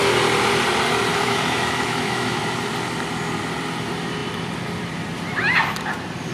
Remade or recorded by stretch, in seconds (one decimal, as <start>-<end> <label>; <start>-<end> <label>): 0.0-1.1 recorded; 1.1-2.4 remade; 2.4-6.3 recorded